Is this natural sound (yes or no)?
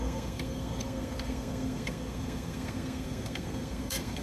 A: no